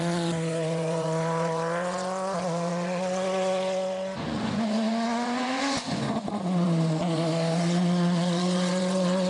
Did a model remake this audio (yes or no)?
yes